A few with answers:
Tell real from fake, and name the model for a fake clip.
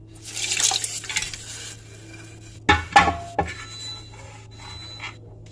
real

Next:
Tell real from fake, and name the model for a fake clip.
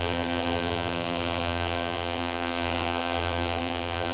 fake, vocoder, BigVGAN v2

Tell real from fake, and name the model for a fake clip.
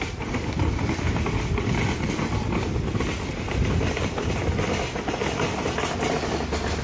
real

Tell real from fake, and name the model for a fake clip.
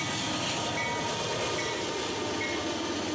real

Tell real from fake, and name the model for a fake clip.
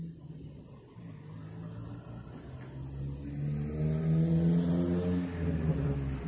real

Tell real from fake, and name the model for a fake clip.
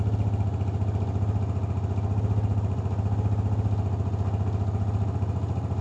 real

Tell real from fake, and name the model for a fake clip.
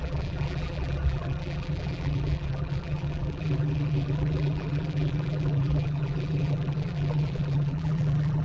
fake, vocoder, BigVGAN v2